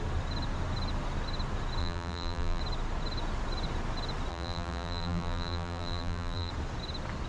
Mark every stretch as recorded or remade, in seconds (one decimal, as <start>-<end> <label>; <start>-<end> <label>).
0.0-1.8 recorded; 1.8-2.6 remade; 2.6-4.3 recorded; 4.3-6.5 remade; 6.5-7.3 recorded